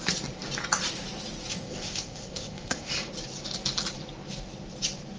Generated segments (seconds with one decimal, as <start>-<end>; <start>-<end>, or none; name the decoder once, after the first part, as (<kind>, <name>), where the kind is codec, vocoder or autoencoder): 1.5-2.9 (codec, ZipCodec)